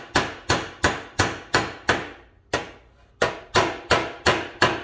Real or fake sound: real